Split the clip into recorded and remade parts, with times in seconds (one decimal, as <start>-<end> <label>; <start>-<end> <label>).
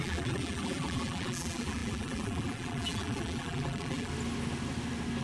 0.0-4.1 remade; 4.1-5.2 recorded